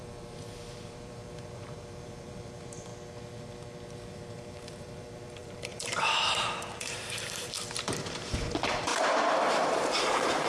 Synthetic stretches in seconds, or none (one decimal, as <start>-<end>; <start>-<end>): 0.0-2.9; 4.1-10.5